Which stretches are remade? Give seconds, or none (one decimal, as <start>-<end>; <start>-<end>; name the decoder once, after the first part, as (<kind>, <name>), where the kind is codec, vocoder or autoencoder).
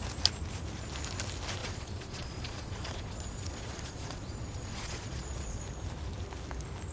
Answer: 1.6-5.6 (vocoder, Vocos)